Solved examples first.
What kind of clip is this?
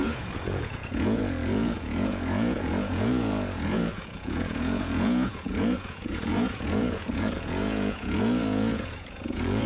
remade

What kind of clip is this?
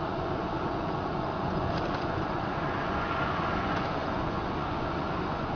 remade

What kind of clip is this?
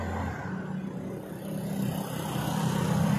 recorded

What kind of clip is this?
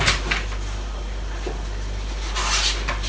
recorded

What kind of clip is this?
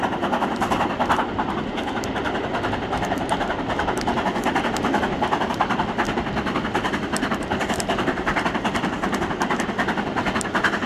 recorded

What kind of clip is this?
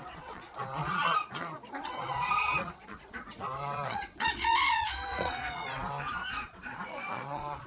remade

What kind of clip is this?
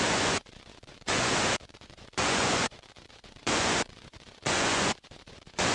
remade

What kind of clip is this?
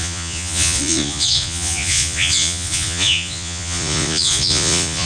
remade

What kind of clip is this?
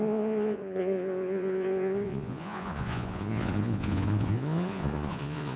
remade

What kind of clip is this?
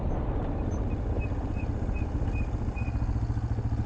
recorded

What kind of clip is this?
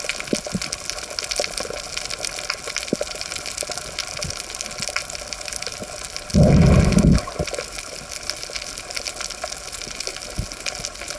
recorded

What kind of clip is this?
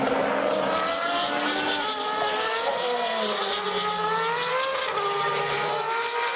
recorded